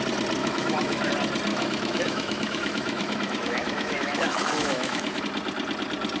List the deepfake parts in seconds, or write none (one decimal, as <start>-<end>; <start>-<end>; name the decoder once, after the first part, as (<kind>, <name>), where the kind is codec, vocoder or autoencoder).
0.4-1.1 (autoencoder, DAC-VAE); 1.5-5.2